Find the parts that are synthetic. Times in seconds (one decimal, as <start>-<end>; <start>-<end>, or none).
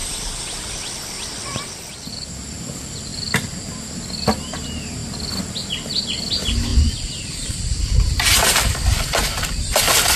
2.1-10.2